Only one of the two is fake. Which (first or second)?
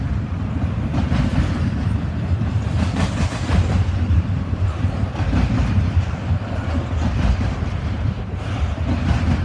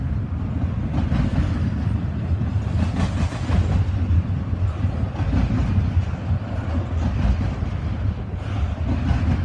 first